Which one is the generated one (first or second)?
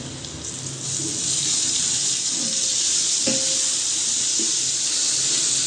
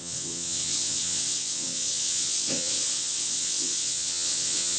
second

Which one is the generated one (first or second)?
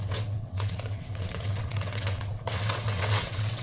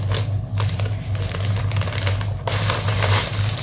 first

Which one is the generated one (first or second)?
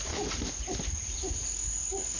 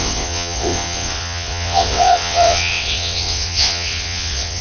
second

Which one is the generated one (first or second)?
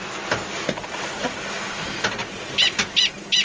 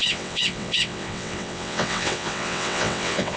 second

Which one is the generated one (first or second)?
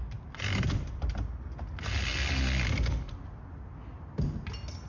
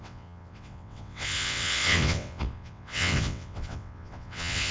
second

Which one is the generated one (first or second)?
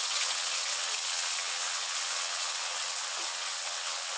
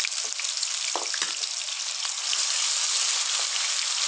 first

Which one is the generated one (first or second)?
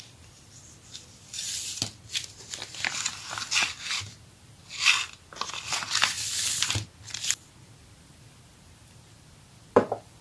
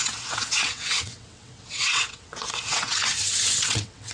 second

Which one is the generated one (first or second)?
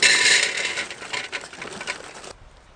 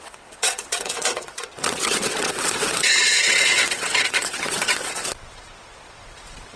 second